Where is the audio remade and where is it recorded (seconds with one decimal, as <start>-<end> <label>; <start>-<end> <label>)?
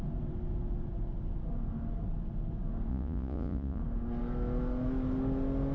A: 0.0-2.9 recorded; 2.9-3.8 remade; 3.8-5.7 recorded